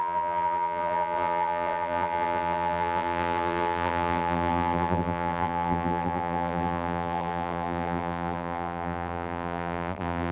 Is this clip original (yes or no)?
no